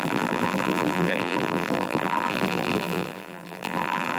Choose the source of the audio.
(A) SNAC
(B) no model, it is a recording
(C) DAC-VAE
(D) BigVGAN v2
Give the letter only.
D